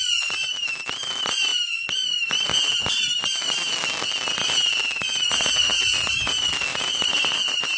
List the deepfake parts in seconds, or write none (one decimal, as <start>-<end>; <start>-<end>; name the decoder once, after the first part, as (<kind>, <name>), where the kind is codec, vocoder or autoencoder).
6.7-7.8 (vocoder, BigVGAN v2)